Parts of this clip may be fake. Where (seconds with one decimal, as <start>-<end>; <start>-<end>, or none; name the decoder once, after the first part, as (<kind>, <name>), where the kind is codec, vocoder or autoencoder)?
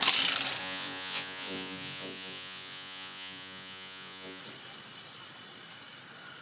0.6-4.4 (vocoder, Vocos)